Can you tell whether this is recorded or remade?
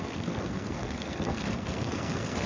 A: remade